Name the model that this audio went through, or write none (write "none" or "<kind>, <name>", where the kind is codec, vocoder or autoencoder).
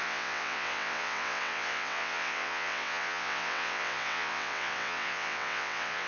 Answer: vocoder, WaveNeXt